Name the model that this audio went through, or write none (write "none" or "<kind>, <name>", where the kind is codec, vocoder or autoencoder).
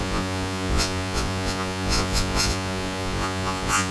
vocoder, Vocos